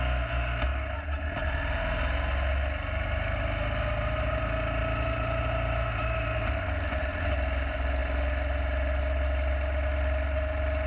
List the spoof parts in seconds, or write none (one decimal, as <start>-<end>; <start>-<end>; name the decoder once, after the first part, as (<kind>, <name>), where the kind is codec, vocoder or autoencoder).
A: none